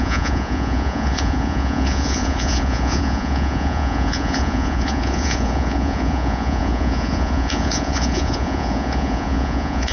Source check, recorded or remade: remade